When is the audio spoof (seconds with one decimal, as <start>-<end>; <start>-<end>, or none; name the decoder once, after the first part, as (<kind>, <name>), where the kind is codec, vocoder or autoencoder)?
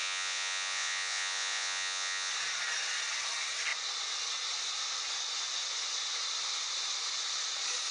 0.0-2.3 (vocoder, Vocos)